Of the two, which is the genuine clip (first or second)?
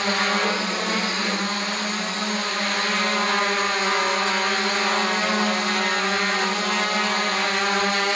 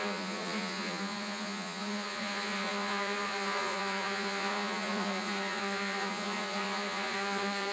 first